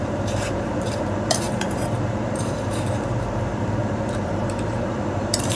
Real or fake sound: fake